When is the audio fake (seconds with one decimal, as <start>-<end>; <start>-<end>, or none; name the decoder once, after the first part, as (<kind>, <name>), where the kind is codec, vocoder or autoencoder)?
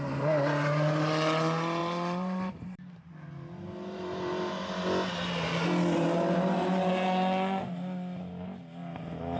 1.8-3.1 (vocoder, BigVGAN v2)